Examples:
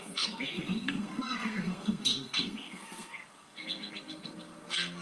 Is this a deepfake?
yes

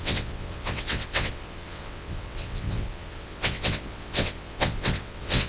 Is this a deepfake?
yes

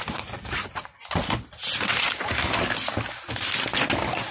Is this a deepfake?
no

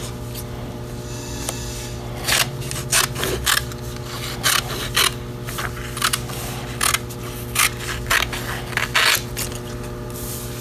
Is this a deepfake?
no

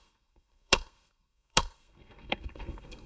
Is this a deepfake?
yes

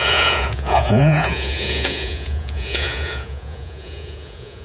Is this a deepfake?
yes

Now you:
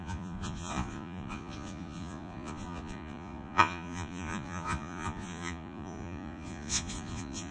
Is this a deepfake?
yes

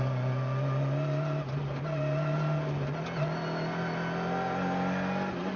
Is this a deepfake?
no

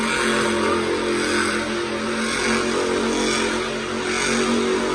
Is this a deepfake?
no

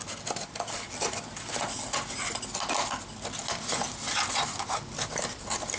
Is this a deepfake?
no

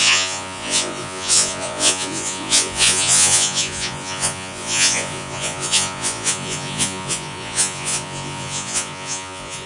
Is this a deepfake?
yes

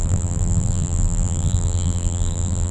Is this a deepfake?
yes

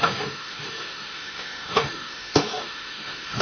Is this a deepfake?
yes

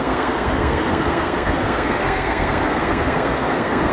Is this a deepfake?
yes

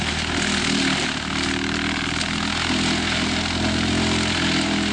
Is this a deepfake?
no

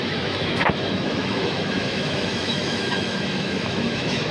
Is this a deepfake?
yes